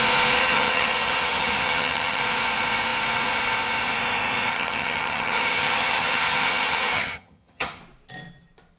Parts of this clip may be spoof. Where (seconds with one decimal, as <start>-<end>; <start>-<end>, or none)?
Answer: 0.4-2.2; 4.5-7.8